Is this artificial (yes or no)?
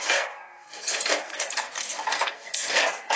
yes